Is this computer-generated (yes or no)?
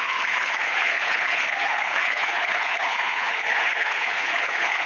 yes